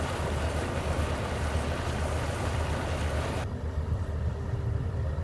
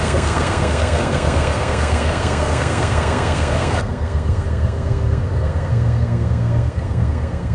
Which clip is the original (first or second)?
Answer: first